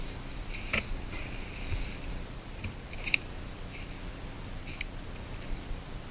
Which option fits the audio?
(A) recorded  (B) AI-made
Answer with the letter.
B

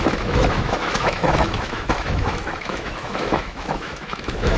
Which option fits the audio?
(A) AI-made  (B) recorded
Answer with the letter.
A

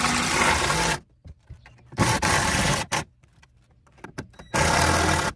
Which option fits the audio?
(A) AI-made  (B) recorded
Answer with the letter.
B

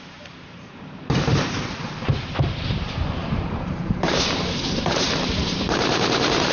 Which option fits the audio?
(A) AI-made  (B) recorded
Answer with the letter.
A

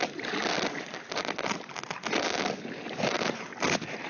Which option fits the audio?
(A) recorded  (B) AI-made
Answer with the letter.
A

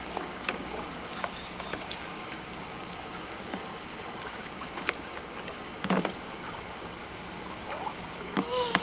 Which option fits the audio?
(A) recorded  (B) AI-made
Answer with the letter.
B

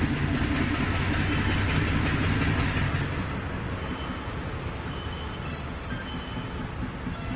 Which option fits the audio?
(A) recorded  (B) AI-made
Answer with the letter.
A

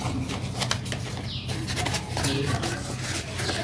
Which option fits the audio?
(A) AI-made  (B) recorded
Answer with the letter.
B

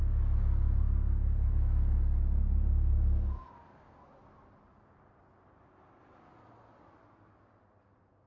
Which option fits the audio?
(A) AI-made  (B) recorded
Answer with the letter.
B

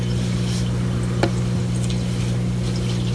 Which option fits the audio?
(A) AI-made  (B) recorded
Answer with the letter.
B